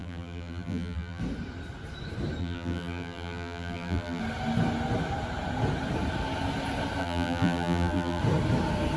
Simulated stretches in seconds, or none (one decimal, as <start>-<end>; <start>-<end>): 0.0-1.2; 2.4-4.2; 7.0-8.2